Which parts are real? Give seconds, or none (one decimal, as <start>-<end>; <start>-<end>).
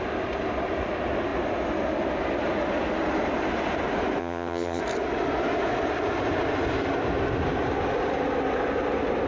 0.0-4.2; 4.8-9.3